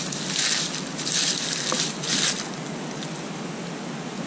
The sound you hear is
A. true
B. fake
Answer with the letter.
A